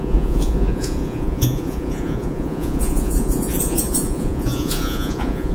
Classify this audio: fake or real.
fake